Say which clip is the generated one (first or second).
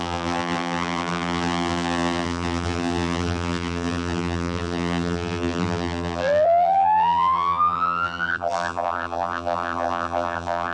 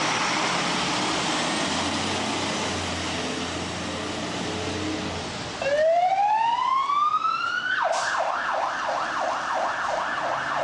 first